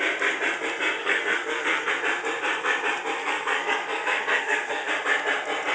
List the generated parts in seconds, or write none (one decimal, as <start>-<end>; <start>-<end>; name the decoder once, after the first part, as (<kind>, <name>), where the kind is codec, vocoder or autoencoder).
1.0-1.9 (codec, SNAC); 3.2-4.9